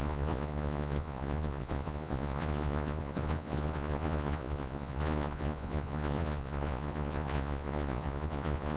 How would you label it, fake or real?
fake